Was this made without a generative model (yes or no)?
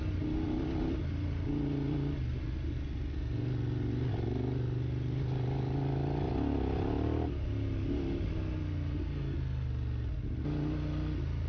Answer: yes